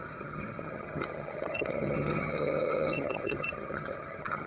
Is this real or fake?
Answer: fake